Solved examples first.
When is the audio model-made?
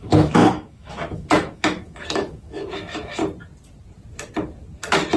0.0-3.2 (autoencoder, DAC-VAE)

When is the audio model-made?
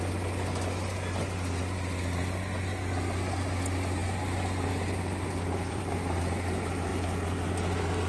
4.0-5.8 (vocoder, BigVGAN v2)